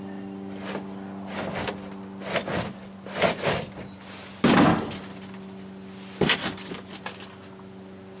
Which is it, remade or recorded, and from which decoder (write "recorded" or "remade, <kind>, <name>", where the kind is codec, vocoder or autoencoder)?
recorded